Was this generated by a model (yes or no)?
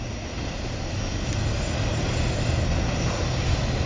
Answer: no